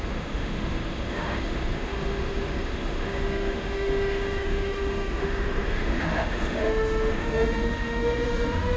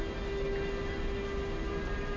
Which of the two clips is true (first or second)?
second